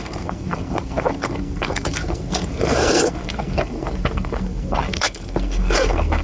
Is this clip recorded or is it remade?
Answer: remade